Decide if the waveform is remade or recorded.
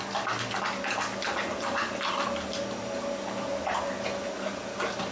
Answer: recorded